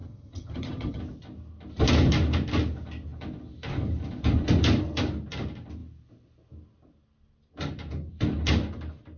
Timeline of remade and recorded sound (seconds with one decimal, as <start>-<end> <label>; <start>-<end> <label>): 0.0-1.0 remade; 1.0-9.2 recorded